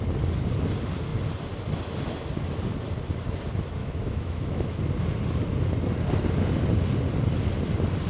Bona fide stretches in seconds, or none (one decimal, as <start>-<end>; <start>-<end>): 0.0-3.8; 4.8-8.1